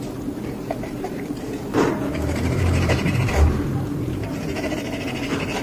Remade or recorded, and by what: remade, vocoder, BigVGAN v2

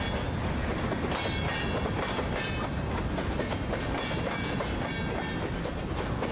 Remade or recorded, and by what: recorded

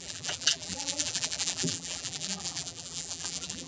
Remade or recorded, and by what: remade, vocoder, BigVGAN v2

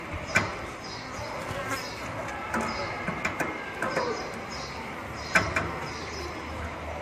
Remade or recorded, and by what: recorded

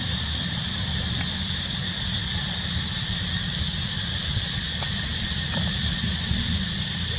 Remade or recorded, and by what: recorded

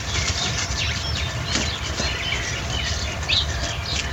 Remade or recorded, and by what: recorded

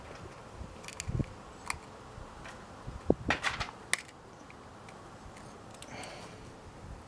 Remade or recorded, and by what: recorded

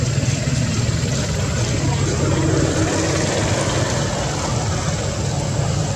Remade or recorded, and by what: recorded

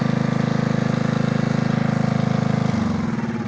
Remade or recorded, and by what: recorded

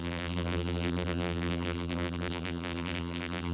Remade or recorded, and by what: remade, vocoder, BigVGAN v2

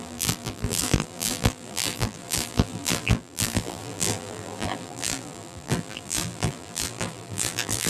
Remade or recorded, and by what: remade, vocoder, BigVGAN v2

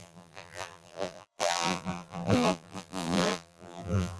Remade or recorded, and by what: remade, vocoder, BigVGAN v2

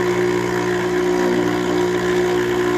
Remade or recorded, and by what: recorded